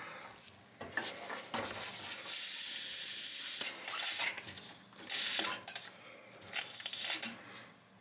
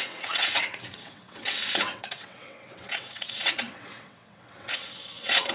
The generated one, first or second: second